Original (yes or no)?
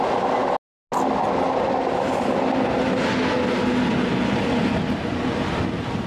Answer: yes